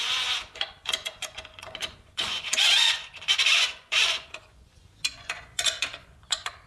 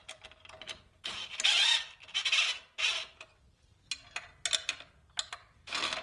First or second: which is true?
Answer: second